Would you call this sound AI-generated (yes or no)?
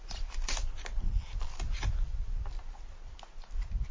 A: no